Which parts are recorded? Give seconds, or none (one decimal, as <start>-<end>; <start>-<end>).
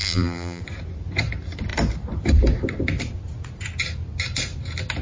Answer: 0.6-5.0